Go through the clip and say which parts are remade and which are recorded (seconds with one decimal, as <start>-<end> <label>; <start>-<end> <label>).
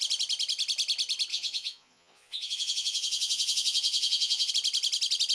0.0-1.3 recorded; 1.3-4.5 remade; 4.5-5.3 recorded